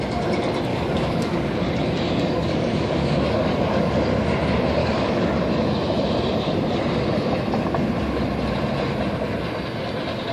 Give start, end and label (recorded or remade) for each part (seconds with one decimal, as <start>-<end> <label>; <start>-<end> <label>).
0.0-0.7 recorded; 0.7-3.9 remade; 3.9-4.8 recorded; 4.8-5.4 remade; 5.4-10.3 recorded